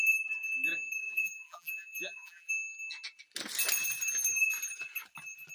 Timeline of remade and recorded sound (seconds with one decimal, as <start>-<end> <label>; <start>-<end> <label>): 0.0-1.0 recorded; 1.0-2.5 remade; 2.5-5.5 recorded

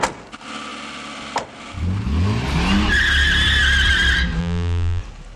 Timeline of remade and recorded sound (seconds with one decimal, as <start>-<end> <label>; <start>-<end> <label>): 0.0-4.4 recorded; 4.4-5.0 remade; 5.0-5.4 recorded